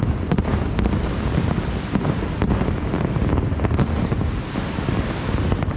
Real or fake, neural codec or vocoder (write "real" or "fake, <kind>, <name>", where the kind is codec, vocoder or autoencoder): real